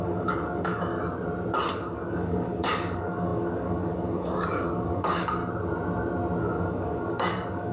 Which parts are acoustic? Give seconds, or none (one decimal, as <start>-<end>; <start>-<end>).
0.9-1.7; 5.4-6.4